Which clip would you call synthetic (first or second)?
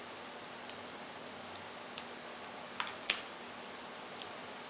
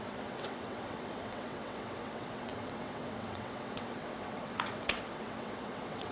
second